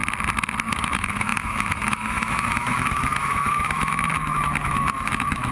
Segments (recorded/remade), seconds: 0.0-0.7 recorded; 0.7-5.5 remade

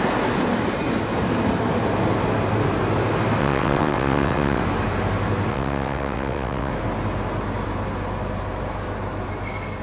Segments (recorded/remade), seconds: 0.0-3.4 recorded; 3.4-4.6 remade; 4.6-5.5 recorded; 5.5-6.7 remade; 6.7-9.8 recorded

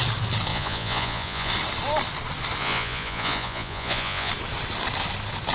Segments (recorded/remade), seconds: 0.0-0.5 recorded; 0.5-1.5 remade; 1.5-2.6 recorded; 2.6-4.3 remade; 4.3-5.5 recorded